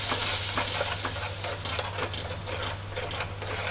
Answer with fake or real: real